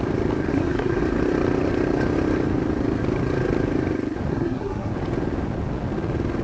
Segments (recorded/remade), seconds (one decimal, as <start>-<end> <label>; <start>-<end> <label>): 0.0-0.5 recorded; 0.5-1.0 remade; 1.0-4.3 recorded; 4.3-4.9 remade; 4.9-6.4 recorded